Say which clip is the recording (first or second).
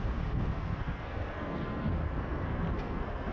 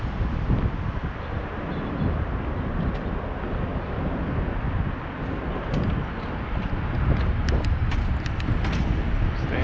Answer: second